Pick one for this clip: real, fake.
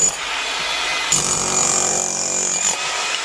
real